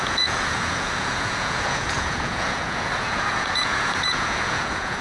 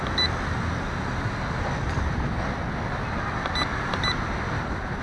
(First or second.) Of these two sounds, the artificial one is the first